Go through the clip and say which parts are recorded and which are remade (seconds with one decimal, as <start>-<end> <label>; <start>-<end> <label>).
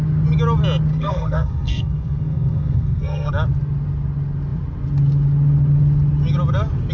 0.0-0.9 recorded; 0.9-3.3 remade; 3.3-6.9 recorded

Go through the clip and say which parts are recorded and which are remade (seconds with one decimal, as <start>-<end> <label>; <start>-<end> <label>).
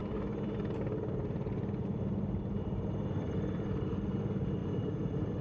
0.0-5.4 remade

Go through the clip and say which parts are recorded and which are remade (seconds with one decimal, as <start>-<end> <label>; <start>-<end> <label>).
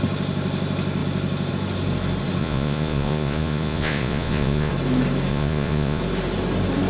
0.0-2.4 recorded; 2.4-4.7 remade; 4.7-5.3 recorded; 5.3-6.0 remade; 6.0-6.9 recorded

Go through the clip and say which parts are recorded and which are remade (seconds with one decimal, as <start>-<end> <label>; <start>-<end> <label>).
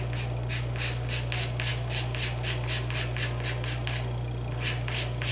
0.0-5.3 recorded